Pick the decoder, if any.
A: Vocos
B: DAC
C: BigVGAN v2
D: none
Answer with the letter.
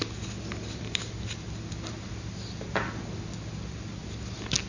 D